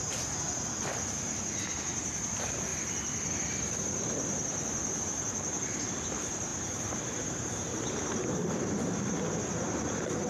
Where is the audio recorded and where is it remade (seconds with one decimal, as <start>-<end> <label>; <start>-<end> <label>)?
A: 0.0-2.7 remade; 2.7-3.5 recorded; 3.5-10.3 remade